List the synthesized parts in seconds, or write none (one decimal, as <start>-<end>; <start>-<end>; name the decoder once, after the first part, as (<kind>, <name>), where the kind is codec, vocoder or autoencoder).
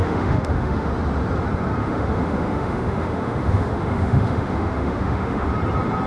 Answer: 0.0-0.9 (autoencoder, DAC-VAE); 1.8-5.5